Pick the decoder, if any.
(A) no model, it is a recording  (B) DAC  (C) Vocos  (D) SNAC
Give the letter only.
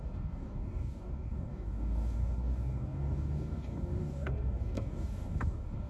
B